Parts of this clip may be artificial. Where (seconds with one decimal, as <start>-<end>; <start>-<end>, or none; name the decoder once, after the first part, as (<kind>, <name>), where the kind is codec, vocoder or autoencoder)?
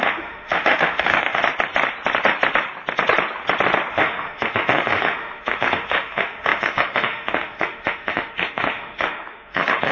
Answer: 0.0-1.4 (autoencoder, DAC-VAE); 3.9-9.9